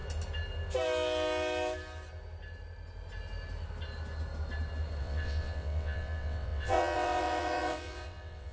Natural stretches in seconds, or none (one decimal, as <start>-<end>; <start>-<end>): 0.0-5.0